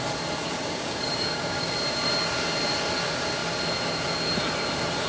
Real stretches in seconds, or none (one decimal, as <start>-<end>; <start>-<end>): 0.0-0.4; 1.7-5.1